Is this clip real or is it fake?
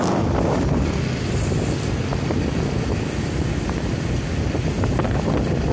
real